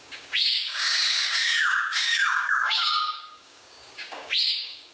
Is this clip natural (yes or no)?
no